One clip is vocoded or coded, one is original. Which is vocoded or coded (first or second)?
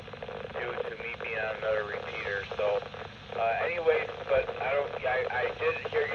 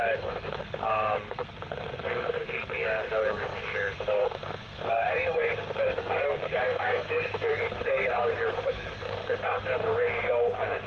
second